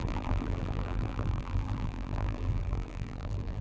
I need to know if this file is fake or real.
fake